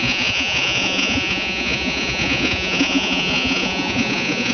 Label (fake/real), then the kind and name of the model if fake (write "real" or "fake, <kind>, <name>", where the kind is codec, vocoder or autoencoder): fake, vocoder, Vocos